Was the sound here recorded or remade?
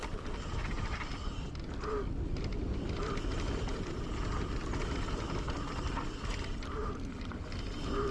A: recorded